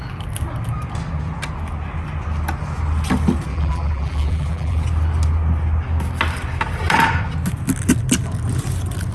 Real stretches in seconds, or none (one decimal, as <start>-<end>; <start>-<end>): 0.0-3.5; 4.8-9.1